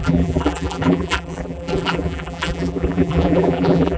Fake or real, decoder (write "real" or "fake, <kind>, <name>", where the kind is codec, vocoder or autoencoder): fake, vocoder, BigVGAN v2